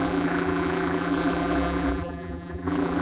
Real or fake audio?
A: fake